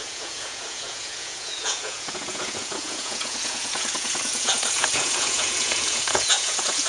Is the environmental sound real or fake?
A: fake